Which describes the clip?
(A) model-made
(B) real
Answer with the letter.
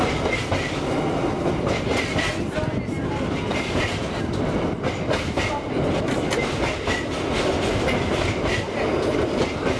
B